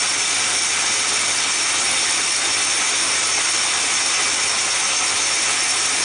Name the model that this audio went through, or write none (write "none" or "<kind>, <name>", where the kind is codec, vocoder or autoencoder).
none